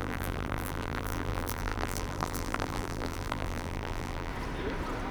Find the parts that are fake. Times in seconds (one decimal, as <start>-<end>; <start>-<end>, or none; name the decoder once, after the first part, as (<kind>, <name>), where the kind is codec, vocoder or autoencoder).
0.0-4.3 (vocoder, BigVGAN v2)